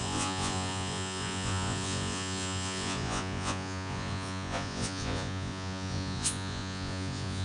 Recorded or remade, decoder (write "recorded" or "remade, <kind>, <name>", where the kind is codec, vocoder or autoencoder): remade, vocoder, Vocos